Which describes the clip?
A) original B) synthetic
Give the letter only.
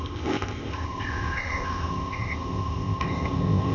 B